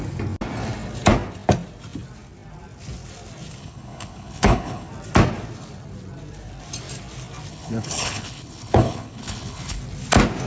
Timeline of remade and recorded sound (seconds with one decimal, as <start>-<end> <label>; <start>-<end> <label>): 0.0-3.6 recorded; 3.6-4.9 remade; 4.9-7.5 recorded; 7.5-9.8 remade; 9.8-10.5 recorded